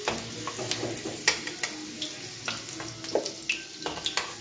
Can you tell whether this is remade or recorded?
recorded